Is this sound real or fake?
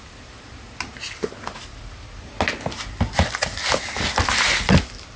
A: real